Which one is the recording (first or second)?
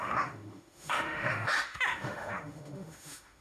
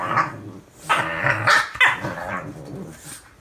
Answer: second